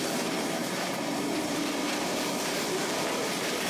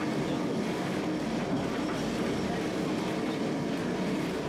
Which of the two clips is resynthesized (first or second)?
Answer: first